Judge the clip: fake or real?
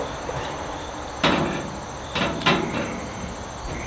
real